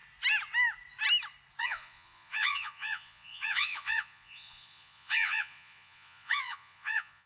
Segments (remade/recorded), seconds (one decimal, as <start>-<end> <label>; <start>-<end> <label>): 0.0-1.6 recorded; 1.6-7.3 remade